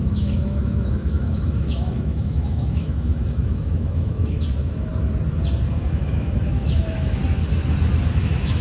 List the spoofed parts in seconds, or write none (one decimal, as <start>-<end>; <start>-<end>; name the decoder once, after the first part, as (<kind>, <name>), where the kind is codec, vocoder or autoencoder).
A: 0.0-4.9 (autoencoder, DAC-VAE); 5.7-7.2; 8.2-8.6